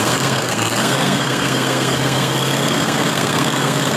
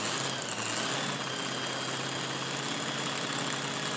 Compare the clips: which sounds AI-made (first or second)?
first